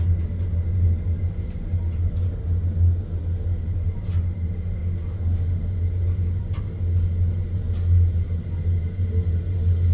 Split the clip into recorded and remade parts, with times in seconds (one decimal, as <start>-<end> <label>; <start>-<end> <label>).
0.0-9.9 recorded